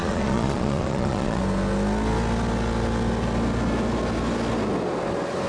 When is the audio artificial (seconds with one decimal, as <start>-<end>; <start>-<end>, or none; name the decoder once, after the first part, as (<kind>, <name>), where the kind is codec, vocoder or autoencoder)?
0.0-1.4 (vocoder, Vocos)